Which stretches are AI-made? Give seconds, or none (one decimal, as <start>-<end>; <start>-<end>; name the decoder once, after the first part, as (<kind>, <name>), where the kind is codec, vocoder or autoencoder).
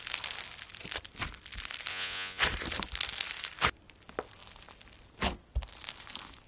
1.9-2.4 (vocoder, Vocos)